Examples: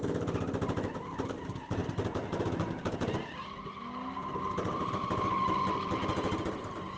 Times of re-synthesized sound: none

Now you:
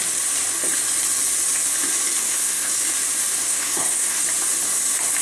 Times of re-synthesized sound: 2.2-2.7 (codec, SNAC); 3.4-4.2

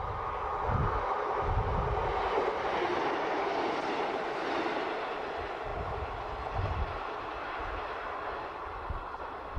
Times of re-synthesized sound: none

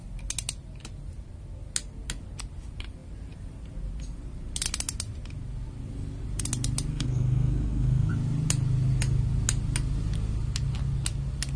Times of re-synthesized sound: 6.9-8.1 (codec, SNAC)

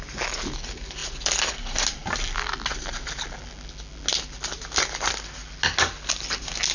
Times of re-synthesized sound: none

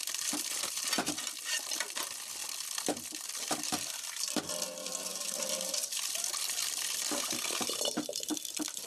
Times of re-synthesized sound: none

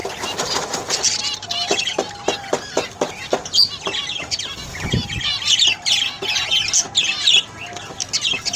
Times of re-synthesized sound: 0.0-0.8 (vocoder, BigVGAN v2)

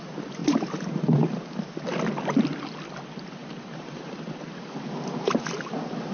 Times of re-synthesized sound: none